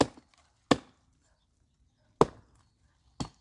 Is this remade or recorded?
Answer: recorded